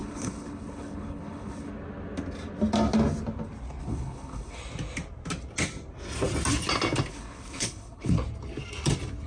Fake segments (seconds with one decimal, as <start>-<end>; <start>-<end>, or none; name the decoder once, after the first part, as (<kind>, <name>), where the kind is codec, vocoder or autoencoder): 0.0-1.7 (codec, HILCodec); 3.8-4.6; 7.1-8.1